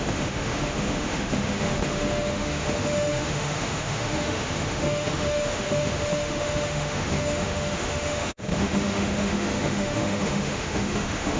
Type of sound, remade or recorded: remade